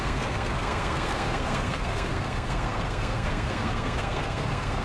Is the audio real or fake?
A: fake